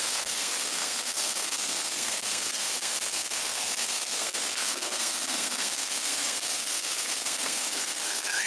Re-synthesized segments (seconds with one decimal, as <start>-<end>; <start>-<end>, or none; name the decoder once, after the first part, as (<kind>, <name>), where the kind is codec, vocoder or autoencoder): 0.0-8.5 (codec, SNAC)